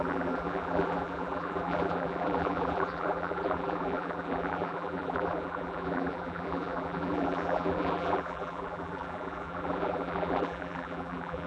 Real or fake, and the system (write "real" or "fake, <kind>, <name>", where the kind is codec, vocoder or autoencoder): fake, vocoder, BigVGAN v2